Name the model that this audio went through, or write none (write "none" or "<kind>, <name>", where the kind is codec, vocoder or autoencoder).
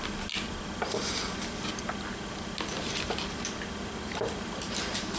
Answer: none